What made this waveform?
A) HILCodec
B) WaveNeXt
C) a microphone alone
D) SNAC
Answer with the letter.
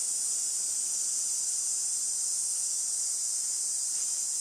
C